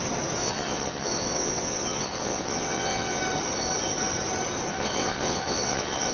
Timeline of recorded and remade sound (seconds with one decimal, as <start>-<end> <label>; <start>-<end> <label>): 0.0-0.4 recorded; 0.4-3.2 remade; 3.2-4.7 recorded; 4.7-6.1 remade